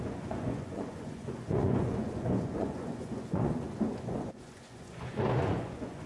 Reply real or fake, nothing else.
fake